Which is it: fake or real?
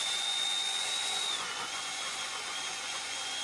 fake